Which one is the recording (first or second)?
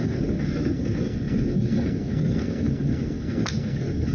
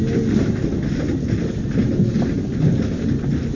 second